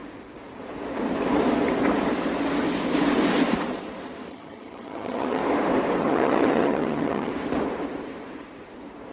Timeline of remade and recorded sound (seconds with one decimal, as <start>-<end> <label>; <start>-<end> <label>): 0.0-4.3 recorded; 4.3-5.4 remade; 5.4-6.0 recorded; 6.0-7.3 remade; 7.3-9.1 recorded